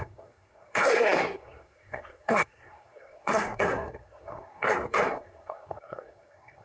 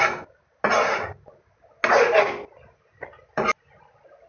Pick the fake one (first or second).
first